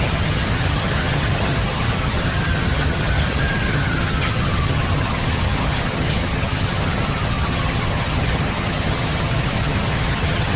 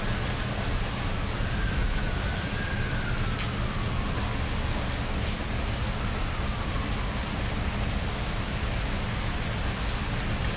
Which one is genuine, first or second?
second